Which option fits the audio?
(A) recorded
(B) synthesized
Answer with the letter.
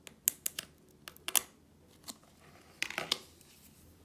A